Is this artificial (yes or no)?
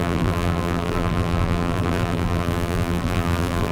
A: yes